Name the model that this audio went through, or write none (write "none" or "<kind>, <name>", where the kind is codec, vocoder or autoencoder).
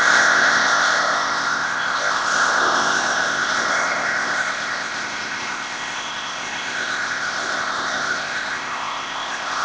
codec, ZipCodec